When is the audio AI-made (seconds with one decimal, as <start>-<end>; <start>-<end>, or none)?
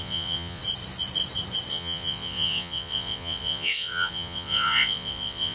0.0-0.6; 1.7-5.5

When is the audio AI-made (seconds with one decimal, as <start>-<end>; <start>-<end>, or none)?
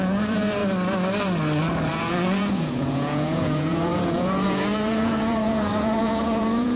0.0-0.6; 1.9-6.8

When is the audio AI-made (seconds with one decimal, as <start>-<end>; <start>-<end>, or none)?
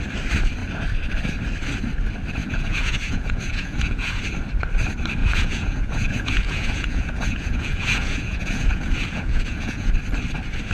2.4-4.2; 5.2-9.9